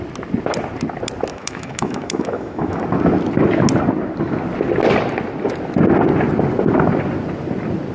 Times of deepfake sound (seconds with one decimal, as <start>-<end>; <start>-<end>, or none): 1.3-2.8